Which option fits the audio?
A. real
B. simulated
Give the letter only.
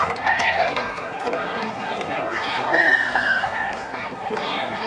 B